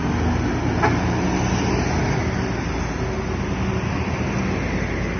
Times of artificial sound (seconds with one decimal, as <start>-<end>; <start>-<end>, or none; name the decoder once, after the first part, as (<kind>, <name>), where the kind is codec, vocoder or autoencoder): none